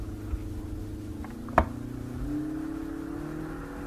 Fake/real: real